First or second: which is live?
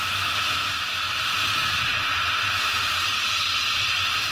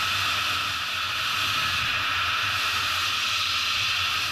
second